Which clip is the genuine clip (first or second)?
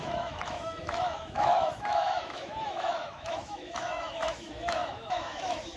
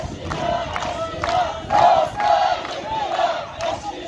second